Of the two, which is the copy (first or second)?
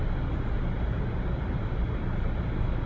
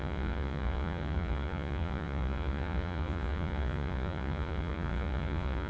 second